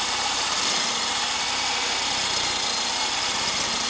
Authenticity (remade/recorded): recorded